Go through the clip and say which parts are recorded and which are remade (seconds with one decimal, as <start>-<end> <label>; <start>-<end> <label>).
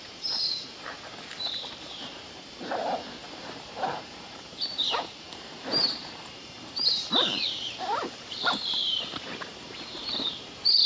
0.0-10.9 remade